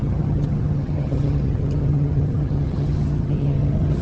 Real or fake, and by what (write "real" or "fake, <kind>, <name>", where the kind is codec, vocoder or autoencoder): fake, vocoder, HiFi-GAN